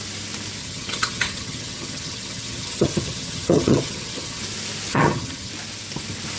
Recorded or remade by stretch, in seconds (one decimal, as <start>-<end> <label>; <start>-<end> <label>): 0.0-0.6 recorded; 0.6-4.4 remade; 4.4-4.9 recorded; 4.9-5.5 remade; 5.5-6.4 recorded